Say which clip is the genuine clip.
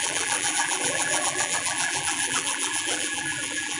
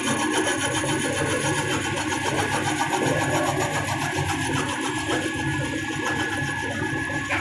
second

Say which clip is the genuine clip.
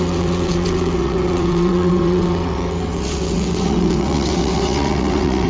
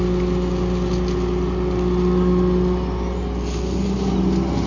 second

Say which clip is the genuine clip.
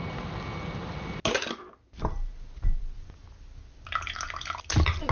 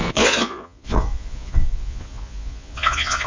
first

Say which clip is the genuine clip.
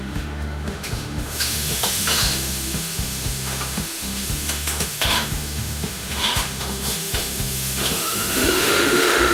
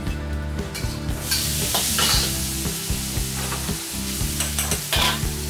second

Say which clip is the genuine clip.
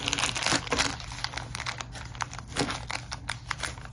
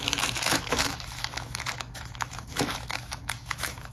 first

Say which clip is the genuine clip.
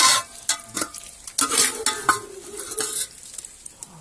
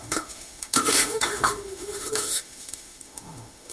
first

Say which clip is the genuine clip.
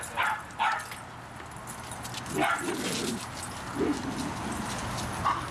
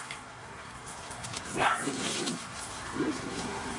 first